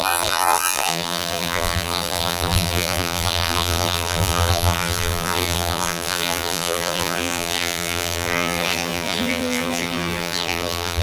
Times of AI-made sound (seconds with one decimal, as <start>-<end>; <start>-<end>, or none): 0.0-11.0